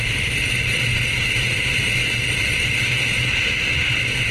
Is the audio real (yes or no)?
yes